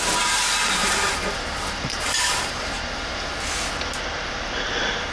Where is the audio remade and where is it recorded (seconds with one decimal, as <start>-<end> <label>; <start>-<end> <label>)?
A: 0.0-0.8 recorded; 0.8-3.3 remade; 3.3-5.1 recorded